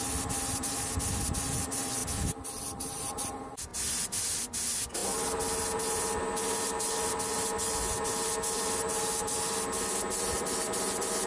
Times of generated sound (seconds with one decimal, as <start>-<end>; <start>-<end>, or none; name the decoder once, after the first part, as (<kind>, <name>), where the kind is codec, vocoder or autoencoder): none